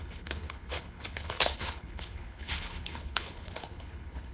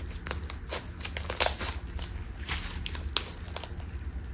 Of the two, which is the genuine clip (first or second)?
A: second